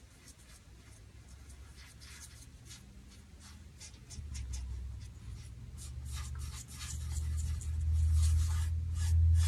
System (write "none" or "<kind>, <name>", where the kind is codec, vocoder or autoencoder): none